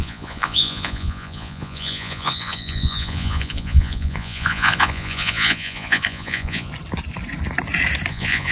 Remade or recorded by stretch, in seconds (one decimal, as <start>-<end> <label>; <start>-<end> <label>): 0.0-6.7 remade; 6.7-8.1 recorded; 8.1-8.5 remade